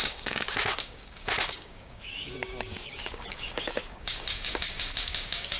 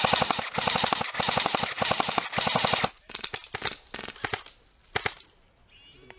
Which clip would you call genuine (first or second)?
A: second